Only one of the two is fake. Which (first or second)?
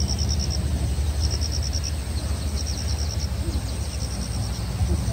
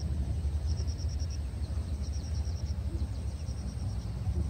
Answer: second